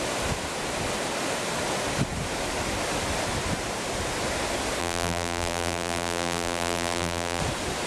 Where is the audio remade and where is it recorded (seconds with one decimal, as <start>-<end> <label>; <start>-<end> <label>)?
0.0-4.8 recorded; 4.8-7.4 remade; 7.4-7.9 recorded